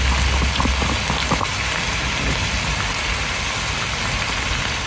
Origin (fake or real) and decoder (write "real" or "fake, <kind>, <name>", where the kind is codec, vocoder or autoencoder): real